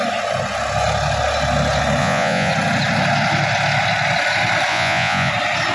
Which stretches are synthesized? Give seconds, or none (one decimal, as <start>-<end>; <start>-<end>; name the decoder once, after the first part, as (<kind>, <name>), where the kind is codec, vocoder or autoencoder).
2.0-2.5 (vocoder, Vocos); 4.7-5.3